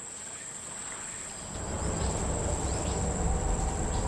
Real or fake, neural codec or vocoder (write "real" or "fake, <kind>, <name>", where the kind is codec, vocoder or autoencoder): real